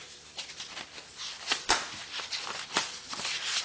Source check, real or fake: real